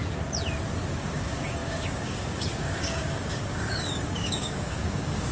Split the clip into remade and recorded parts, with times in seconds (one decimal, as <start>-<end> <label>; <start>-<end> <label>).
0.0-1.0 recorded; 1.0-5.3 remade